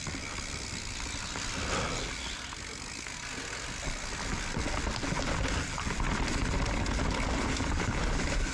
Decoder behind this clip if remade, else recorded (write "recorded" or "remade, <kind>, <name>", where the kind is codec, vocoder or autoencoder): recorded